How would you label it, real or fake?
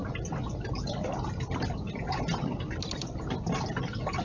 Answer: real